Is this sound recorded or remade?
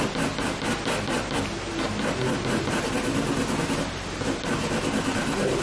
recorded